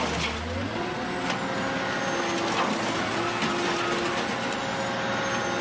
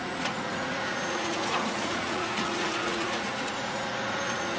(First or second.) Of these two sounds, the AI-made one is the second